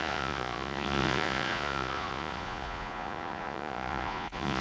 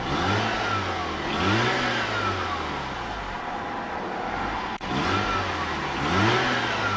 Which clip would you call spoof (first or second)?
first